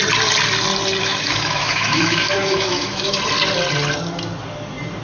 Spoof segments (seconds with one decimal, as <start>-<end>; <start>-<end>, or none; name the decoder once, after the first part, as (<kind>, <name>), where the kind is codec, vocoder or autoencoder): 1.0-3.2 (autoencoder, DAC-VAE)